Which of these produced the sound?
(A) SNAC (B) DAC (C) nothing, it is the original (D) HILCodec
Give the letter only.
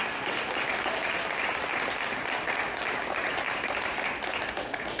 C